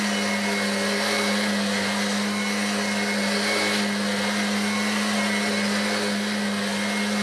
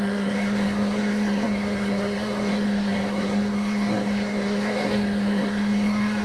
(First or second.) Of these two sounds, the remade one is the second